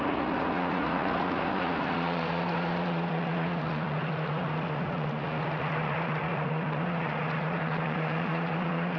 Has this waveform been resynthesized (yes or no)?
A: yes